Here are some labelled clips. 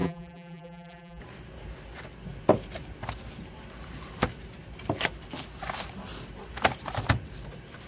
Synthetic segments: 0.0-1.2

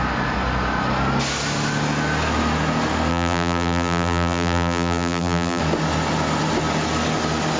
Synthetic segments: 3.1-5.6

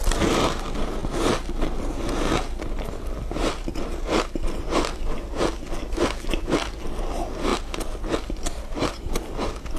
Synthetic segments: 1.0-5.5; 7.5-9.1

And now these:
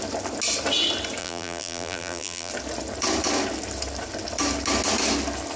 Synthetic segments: 1.2-2.5

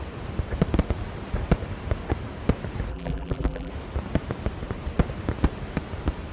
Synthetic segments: 2.9-3.7

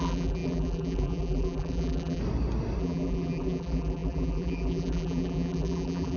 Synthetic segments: 0.0-2.2; 2.8-6.2